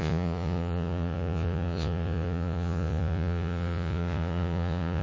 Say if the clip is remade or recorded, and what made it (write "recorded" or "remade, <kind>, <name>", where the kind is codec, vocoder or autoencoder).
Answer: remade, vocoder, Vocos